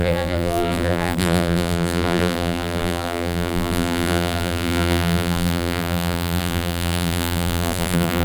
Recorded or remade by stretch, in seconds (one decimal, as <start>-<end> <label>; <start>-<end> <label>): 0.0-8.2 remade